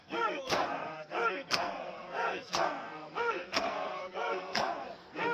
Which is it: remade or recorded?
remade